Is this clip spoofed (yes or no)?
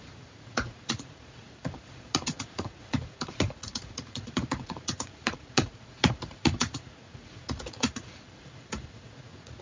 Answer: yes